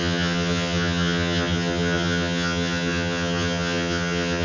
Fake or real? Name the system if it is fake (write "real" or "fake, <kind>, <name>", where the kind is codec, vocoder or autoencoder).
fake, vocoder, HiFi-GAN